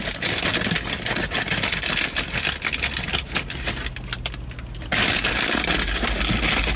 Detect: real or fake real